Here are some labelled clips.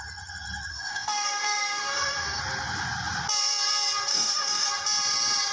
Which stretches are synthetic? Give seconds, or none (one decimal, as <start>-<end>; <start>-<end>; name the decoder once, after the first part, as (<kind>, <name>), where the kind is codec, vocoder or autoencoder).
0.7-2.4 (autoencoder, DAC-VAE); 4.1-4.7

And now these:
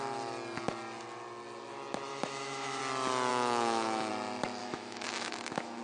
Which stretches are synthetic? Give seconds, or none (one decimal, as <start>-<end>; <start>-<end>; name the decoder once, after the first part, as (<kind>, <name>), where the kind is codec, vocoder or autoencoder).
2.1-2.8 (autoencoder, DAC-VAE); 3.3-4.1; 4.6-5.8

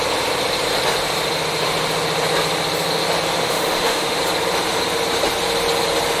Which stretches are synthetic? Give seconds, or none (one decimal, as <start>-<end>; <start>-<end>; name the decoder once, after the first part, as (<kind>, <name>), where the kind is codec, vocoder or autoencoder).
3.4-4.2 (autoencoder, DAC-VAE)

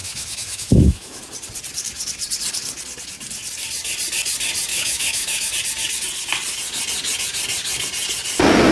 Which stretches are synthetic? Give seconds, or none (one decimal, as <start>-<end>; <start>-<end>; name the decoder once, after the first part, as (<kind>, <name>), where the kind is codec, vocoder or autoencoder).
0.0-1.2 (autoencoder, DAC-VAE); 4.7-5.5